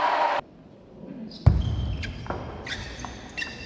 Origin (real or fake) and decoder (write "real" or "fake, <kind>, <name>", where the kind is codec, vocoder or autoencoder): real